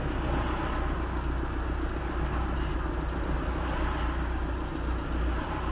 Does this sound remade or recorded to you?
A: recorded